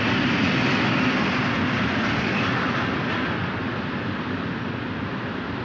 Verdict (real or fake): real